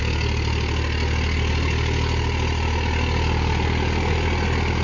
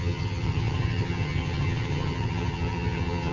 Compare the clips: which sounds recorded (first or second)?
first